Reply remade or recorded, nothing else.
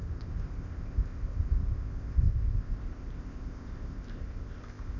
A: remade